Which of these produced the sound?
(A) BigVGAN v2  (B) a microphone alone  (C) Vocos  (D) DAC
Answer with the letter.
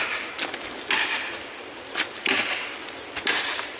B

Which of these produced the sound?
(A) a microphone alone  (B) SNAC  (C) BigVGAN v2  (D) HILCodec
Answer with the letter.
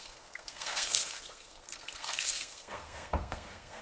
B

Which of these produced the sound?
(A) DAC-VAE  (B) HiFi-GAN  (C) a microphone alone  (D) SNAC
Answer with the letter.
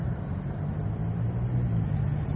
C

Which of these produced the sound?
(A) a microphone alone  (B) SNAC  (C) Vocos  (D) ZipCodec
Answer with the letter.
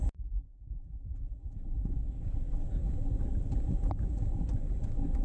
A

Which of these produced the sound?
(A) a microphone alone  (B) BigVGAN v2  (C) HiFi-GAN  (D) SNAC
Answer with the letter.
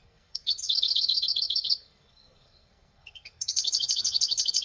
D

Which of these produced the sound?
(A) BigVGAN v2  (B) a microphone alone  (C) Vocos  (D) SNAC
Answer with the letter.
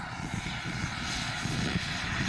C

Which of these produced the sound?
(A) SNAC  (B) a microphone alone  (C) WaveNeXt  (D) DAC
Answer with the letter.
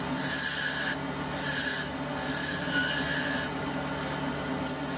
B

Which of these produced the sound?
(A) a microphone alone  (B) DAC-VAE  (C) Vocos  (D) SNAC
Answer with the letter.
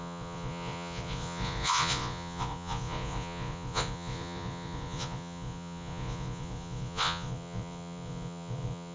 C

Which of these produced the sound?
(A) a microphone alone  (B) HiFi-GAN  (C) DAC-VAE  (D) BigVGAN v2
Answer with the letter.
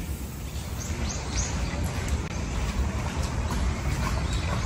A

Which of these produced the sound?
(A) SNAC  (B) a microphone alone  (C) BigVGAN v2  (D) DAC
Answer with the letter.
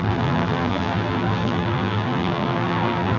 C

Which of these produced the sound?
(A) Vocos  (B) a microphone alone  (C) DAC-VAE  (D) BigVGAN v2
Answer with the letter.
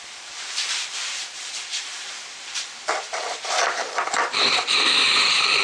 D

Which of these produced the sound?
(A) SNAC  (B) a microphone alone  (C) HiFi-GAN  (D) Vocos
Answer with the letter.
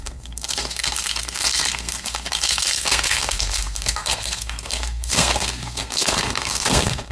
A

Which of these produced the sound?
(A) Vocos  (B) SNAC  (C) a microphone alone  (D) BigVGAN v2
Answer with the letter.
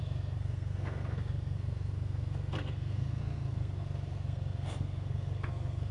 B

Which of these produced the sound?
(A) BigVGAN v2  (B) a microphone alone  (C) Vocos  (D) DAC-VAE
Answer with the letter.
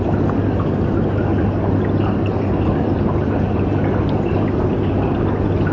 B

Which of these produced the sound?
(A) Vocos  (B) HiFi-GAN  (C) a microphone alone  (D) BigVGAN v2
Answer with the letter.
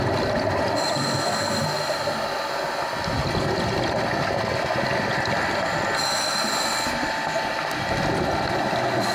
C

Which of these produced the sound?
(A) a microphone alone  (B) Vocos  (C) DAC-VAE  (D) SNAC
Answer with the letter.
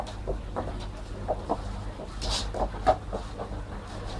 A